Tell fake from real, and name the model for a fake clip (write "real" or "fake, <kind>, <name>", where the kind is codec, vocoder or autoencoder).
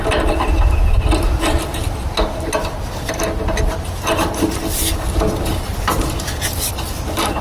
real